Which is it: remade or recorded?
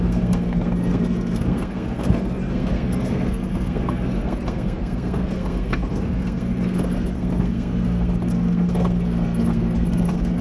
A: remade